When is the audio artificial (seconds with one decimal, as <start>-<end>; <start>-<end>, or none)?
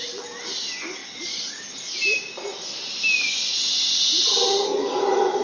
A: 1.0-1.5